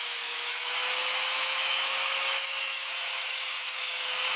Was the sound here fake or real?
fake